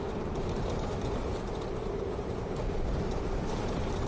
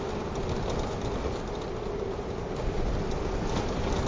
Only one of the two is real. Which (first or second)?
second